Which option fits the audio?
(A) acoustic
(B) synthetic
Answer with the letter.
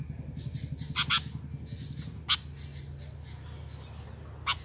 A